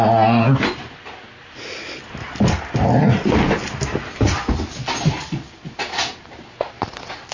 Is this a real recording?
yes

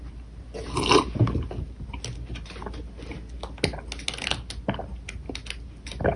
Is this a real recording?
yes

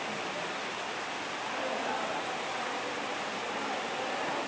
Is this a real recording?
yes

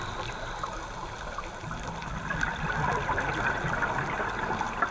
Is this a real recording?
yes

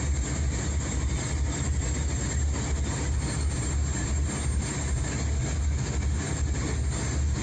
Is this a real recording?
yes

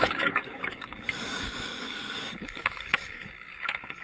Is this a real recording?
no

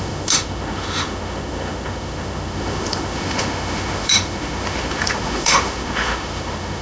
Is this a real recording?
no